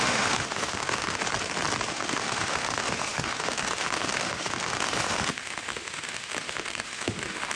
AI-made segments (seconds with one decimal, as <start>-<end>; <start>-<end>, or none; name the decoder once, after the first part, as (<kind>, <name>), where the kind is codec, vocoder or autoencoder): 0.0-1.2 (autoencoder, DAC-VAE); 1.9-7.6